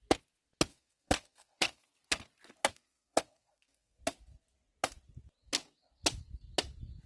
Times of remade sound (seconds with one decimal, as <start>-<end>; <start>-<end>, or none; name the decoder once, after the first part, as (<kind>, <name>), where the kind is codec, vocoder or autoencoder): 0.7-1.9 (codec, SNAC); 2.7-4.0